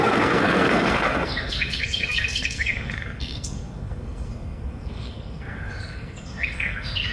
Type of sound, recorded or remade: remade